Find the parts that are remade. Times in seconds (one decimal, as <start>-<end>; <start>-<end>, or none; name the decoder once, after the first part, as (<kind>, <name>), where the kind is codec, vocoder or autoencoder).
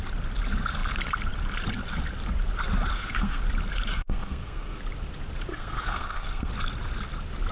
2.9-3.4 (codec, SNAC); 3.9-4.8; 5.5-6.5